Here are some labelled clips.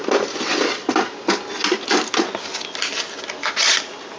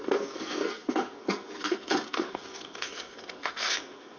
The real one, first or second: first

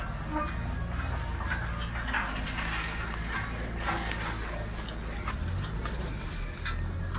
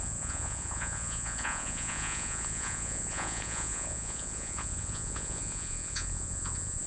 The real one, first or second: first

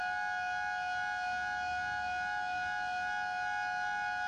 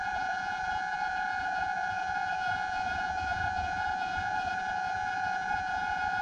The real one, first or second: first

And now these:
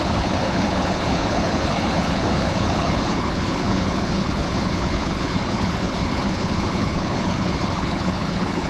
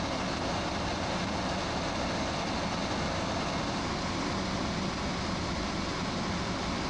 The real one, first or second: second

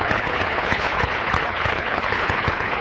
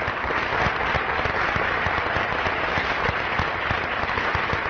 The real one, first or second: second